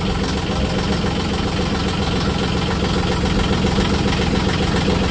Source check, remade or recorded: recorded